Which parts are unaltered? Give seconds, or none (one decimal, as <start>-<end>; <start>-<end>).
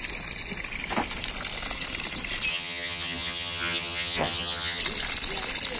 0.0-2.5; 4.8-5.8